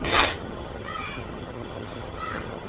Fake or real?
fake